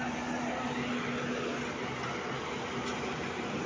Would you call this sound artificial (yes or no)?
no